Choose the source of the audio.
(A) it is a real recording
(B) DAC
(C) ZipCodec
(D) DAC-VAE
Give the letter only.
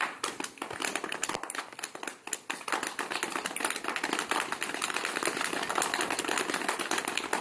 A